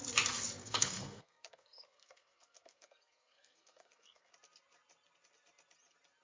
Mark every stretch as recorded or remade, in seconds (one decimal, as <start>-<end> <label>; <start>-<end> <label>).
0.0-0.6 recorded; 0.6-4.3 remade; 4.3-6.2 recorded